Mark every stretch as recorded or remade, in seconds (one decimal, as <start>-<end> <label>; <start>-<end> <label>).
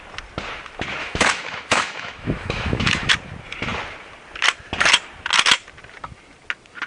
0.0-1.0 recorded; 1.0-3.1 remade; 3.1-6.9 recorded